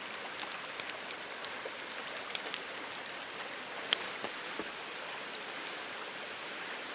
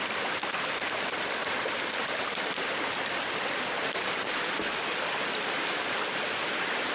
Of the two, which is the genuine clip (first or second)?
first